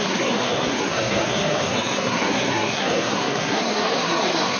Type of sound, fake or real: fake